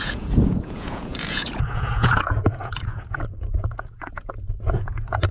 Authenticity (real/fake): fake